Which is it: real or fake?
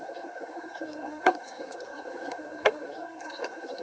fake